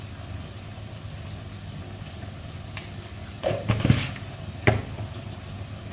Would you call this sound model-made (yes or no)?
no